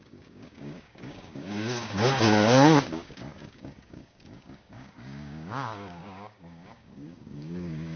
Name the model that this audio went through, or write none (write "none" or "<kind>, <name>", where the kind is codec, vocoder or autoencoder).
codec, DAC